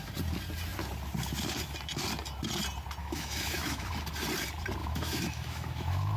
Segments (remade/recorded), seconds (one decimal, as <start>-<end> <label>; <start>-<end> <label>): 0.0-3.0 recorded; 3.0-3.9 remade; 3.9-4.8 recorded; 4.8-6.2 remade